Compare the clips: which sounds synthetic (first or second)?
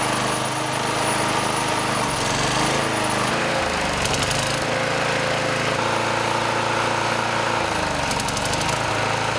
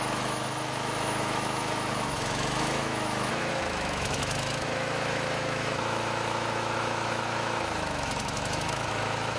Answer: second